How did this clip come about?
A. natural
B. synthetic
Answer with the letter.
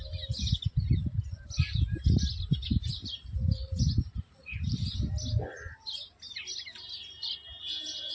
A